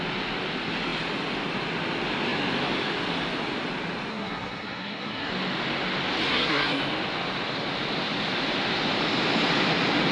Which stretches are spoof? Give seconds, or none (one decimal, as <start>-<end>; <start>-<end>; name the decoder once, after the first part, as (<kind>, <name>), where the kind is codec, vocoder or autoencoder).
4.1-5.3 (codec, SNAC); 6.3-6.8